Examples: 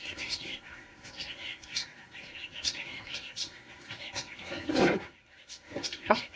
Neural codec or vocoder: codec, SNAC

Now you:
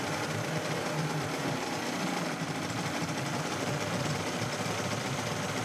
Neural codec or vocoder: vocoder, BigVGAN v2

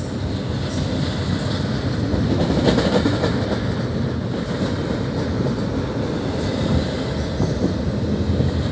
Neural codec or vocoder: none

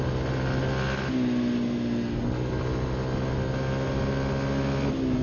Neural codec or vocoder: none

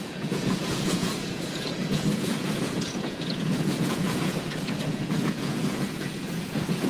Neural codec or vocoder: vocoder, Vocos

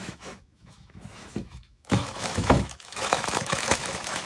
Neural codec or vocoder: autoencoder, DAC-VAE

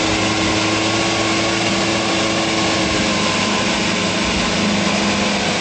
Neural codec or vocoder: none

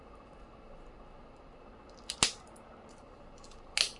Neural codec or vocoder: none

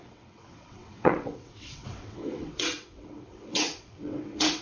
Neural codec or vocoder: vocoder, WaveNeXt